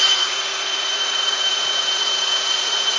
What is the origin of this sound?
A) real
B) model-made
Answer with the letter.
B